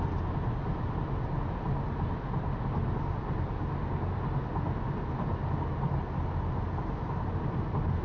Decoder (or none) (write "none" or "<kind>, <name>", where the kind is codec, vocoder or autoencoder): none